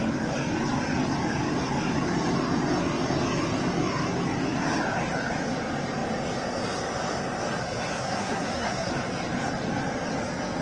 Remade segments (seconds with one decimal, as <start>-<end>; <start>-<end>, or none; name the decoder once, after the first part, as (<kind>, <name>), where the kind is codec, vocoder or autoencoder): 7.6-8.9 (codec, SNAC)